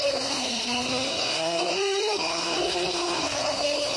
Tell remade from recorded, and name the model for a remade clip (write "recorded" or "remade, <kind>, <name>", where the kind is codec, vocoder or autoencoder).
remade, codec, SNAC